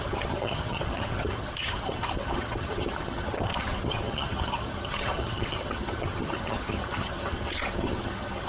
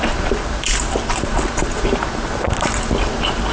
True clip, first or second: second